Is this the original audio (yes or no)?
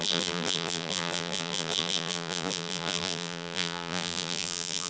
no